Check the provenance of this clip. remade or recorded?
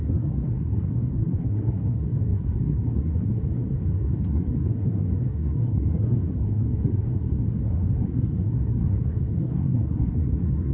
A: remade